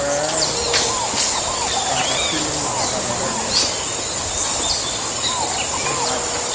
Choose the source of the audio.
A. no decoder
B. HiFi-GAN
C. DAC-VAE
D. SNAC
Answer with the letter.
A